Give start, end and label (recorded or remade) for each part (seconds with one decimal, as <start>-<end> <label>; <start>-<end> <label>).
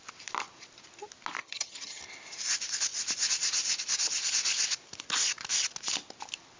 0.0-1.4 recorded; 1.4-2.0 remade; 2.0-6.6 recorded